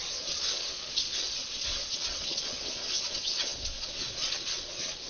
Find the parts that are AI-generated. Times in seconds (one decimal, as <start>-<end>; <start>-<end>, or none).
0.0-5.1